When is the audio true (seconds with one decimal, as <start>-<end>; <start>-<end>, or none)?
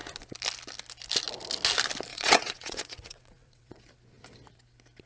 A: 0.0-2.1; 3.7-5.1